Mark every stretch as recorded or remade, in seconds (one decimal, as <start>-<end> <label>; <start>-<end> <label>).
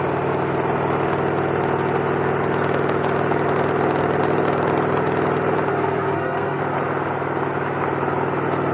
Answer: 0.0-5.7 recorded; 5.7-6.6 remade; 6.6-8.7 recorded